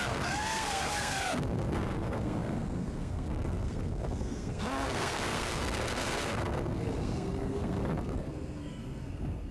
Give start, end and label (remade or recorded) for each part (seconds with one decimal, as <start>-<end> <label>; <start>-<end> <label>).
0.0-9.5 remade